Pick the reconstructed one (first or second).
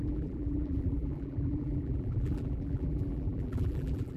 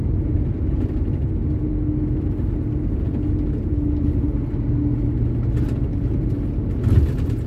first